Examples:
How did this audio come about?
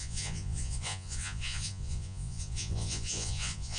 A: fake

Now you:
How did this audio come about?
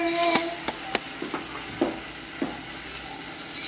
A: real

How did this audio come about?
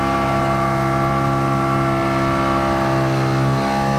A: real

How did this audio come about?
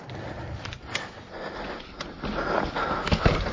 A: real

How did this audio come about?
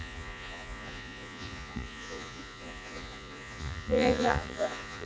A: fake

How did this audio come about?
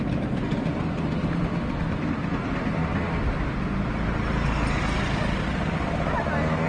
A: real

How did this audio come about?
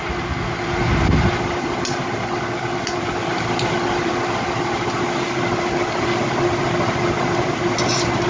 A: real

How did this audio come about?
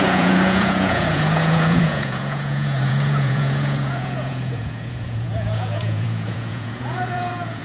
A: fake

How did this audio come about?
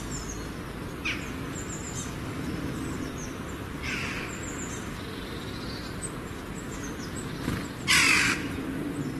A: real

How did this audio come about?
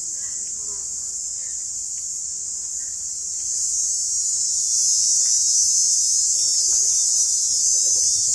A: real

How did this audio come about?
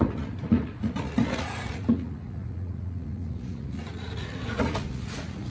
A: fake